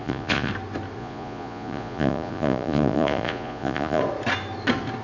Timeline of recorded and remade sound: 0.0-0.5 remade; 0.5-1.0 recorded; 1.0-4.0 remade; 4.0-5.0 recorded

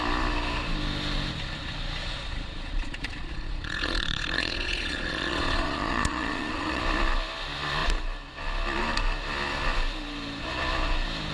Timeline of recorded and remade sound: 0.0-2.0 recorded; 2.0-6.8 remade; 6.8-11.3 recorded

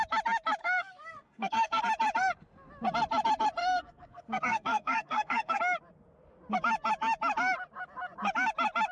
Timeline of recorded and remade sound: 0.0-0.6 recorded; 0.6-1.8 remade; 1.8-3.6 recorded; 3.6-5.6 remade; 5.6-8.9 recorded

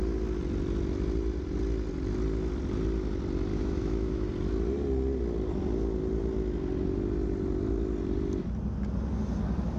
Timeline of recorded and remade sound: 0.0-3.5 recorded; 3.5-4.3 remade; 4.3-9.8 recorded

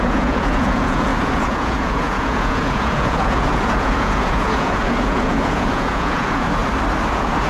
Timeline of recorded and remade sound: 0.0-6.6 remade; 6.6-7.1 recorded; 7.1-7.5 remade